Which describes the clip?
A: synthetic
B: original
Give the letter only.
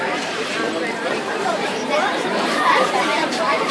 A